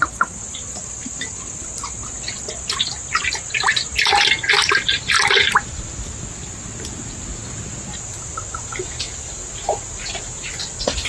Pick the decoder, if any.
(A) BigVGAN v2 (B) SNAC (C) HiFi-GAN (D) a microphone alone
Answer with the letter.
D